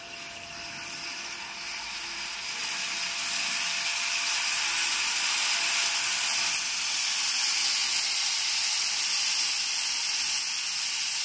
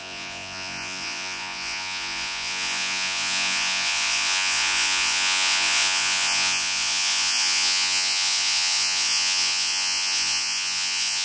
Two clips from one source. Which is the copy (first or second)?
second